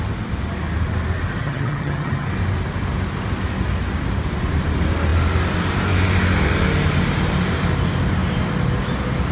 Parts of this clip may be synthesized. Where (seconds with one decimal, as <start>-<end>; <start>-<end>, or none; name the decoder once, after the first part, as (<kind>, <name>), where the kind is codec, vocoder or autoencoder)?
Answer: 1.4-2.3 (vocoder, HiFi-GAN)